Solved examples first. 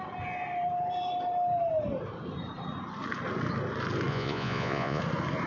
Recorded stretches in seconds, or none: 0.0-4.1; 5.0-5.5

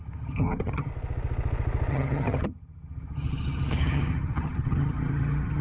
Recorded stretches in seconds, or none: 0.9-1.9

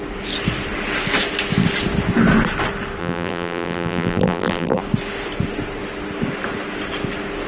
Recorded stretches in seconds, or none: 0.0-3.0; 4.8-7.5